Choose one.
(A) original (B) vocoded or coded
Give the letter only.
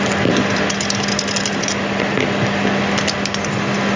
A